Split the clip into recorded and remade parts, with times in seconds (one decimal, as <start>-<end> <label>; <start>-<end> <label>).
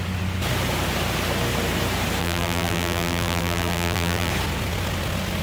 0.0-2.2 recorded; 2.2-4.3 remade; 4.3-5.4 recorded